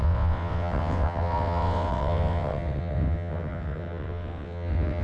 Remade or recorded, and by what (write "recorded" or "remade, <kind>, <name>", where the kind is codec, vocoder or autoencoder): remade, vocoder, WaveNeXt